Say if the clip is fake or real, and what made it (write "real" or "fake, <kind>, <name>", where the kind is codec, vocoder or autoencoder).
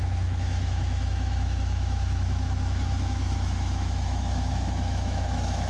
fake, autoencoder, DAC-VAE